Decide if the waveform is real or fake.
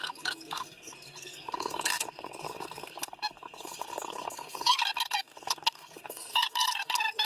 fake